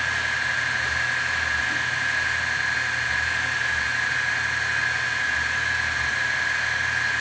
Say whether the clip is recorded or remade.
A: recorded